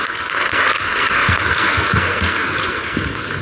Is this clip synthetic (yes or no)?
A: yes